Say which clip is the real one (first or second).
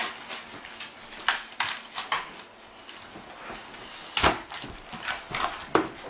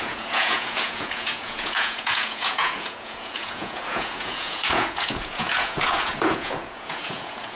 first